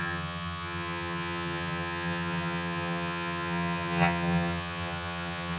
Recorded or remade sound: remade